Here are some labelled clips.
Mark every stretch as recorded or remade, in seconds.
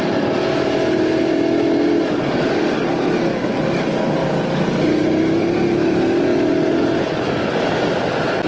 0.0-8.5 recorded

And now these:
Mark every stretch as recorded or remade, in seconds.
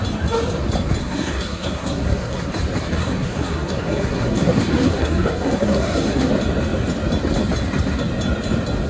0.0-1.0 recorded; 1.0-2.5 remade; 2.5-2.9 recorded; 2.9-6.3 remade; 6.3-8.9 recorded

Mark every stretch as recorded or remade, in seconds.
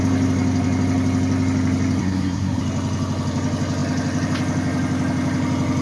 0.0-2.0 recorded; 2.0-2.6 remade; 2.6-5.8 recorded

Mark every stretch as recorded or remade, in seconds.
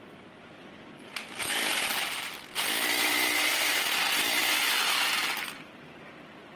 0.0-1.7 recorded; 1.7-3.9 remade; 3.9-6.6 recorded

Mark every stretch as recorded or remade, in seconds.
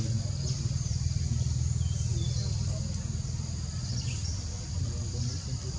0.0-5.8 recorded